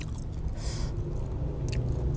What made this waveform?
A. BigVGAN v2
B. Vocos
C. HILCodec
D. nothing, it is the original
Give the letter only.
D